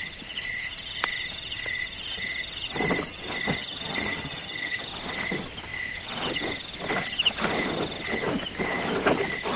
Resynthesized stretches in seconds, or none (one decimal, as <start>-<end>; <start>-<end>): 3.6-4.9